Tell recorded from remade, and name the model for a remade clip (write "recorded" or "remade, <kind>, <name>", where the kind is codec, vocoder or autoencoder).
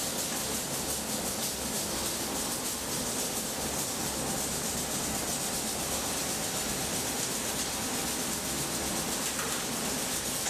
recorded